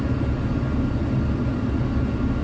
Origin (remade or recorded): recorded